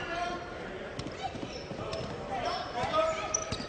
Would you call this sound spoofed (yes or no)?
yes